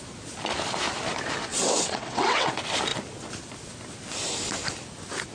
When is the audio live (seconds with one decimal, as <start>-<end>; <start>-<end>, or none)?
0.0-1.5; 2.5-5.3